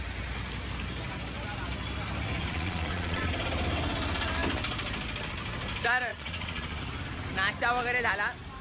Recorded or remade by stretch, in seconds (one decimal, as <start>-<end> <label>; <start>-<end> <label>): 0.0-2.5 recorded; 2.5-3.3 remade; 3.3-6.1 recorded; 6.1-6.8 remade; 6.8-8.6 recorded